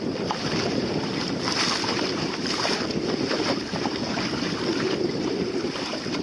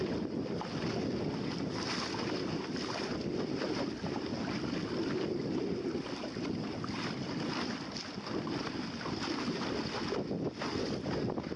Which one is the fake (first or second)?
first